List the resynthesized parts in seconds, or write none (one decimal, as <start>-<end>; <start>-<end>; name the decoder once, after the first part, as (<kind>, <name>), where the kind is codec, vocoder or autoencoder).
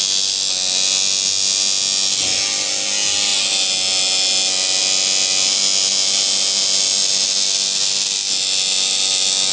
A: none